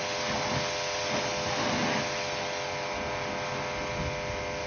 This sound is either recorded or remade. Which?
recorded